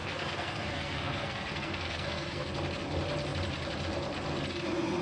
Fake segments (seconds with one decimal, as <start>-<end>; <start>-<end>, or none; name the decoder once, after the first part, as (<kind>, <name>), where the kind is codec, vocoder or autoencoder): 0.0-2.5 (codec, SNAC)

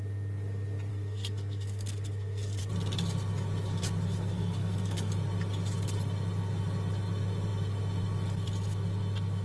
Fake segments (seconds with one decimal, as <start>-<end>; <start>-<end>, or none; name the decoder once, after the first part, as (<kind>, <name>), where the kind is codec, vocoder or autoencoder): 0.9-2.6 (codec, SNAC); 4.1-5.1